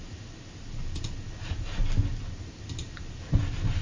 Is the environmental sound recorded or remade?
recorded